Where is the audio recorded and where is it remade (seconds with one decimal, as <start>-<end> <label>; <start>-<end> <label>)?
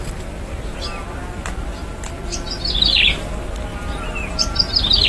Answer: 0.0-5.1 recorded